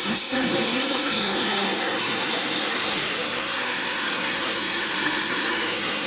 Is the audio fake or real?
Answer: fake